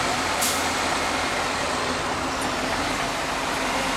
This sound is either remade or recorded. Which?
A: recorded